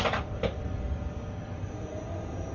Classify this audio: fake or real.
fake